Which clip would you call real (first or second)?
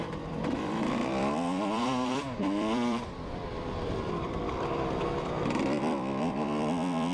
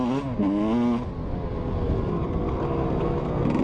second